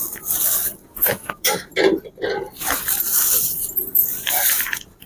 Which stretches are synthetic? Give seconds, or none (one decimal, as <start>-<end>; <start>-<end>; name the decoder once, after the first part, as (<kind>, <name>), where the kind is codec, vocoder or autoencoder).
0.9-1.7 (autoencoder, DAC-VAE)